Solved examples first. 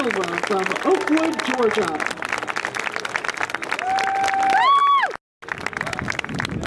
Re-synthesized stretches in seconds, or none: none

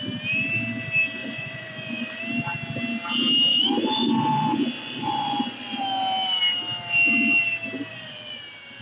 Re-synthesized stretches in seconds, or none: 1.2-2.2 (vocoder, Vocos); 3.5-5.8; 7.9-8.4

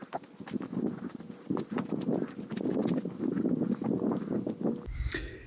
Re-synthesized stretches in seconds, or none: none